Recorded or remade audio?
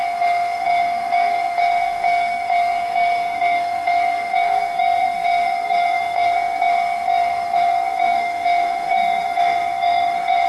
remade